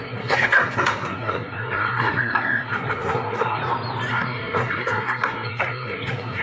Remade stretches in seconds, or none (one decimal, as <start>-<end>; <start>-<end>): 0.0-3.6; 4.1-6.4